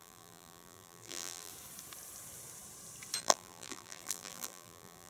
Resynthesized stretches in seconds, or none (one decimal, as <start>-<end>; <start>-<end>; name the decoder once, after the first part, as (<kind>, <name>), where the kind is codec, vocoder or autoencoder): 0.0-1.5 (vocoder, BigVGAN v2); 3.2-5.1